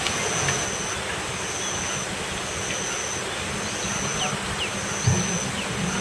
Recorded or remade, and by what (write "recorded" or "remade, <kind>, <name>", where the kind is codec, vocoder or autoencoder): recorded